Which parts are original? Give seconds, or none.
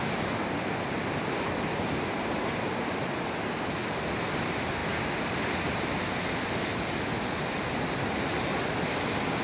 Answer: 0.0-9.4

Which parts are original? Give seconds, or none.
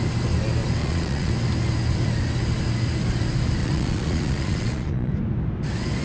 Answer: 0.0-0.8; 1.3-3.6; 5.1-6.0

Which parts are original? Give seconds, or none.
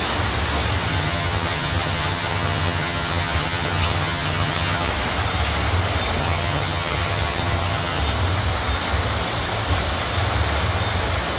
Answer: 0.0-0.9; 4.9-6.2; 8.0-11.4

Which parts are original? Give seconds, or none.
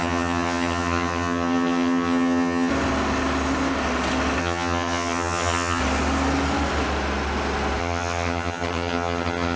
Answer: 2.7-4.4; 5.8-7.8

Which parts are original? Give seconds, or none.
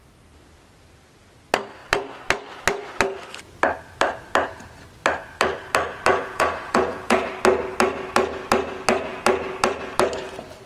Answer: 0.0-6.1; 7.3-10.7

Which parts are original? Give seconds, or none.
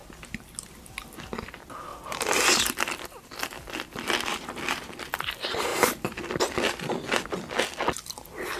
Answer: 0.0-1.9; 5.2-5.7; 6.3-8.6